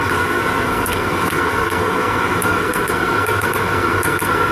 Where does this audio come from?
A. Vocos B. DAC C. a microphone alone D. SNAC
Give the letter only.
D